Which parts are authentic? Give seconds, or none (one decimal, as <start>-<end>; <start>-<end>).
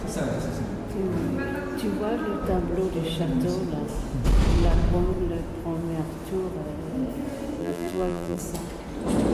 0.0-7.6; 8.4-9.3